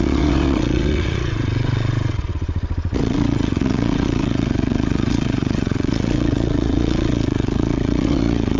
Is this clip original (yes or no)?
no